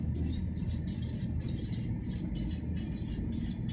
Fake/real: real